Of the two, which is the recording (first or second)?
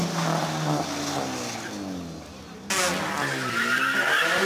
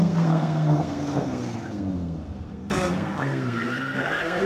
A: first